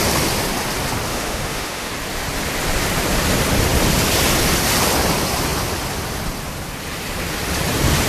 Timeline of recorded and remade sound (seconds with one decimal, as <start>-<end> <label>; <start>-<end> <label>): 0.0-1.1 recorded; 1.1-1.9 remade; 1.9-8.1 recorded